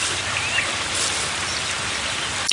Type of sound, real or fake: real